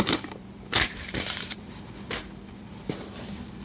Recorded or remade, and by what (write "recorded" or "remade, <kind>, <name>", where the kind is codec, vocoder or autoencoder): remade, vocoder, BigVGAN v2